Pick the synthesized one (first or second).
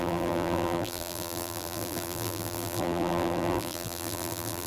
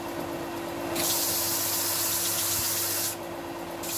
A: first